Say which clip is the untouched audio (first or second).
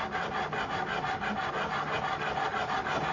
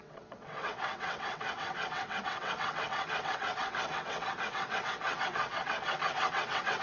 first